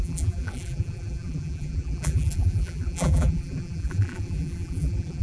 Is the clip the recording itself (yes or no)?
no